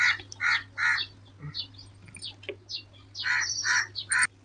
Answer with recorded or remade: recorded